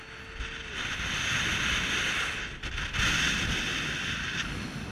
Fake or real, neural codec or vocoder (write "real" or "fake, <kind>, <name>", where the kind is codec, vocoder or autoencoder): real